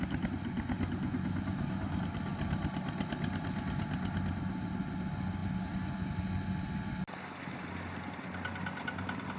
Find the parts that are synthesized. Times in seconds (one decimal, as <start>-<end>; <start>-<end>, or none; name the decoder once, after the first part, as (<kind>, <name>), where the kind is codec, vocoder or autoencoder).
none